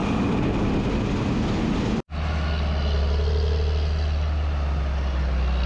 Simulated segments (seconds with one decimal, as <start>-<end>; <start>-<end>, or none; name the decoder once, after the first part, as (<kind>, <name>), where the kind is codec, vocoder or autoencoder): none